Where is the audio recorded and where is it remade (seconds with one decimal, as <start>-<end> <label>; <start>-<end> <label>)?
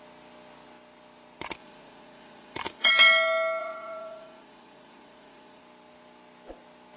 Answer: 0.0-1.6 recorded; 1.6-2.9 remade; 2.9-3.6 recorded; 3.6-5.6 remade; 5.6-7.0 recorded